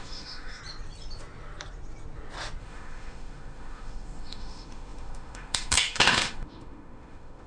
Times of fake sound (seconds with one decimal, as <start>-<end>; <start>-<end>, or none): 0.0-0.6; 2.6-7.5